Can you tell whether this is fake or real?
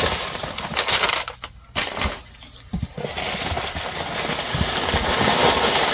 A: real